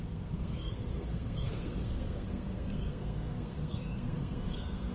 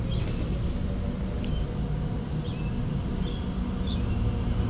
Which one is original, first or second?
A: second